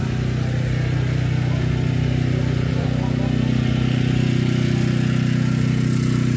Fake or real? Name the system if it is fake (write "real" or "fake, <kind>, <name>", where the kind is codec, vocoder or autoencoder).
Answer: real